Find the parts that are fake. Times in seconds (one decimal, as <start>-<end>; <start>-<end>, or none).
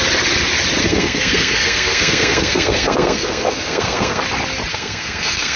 0.8-4.2; 4.7-5.6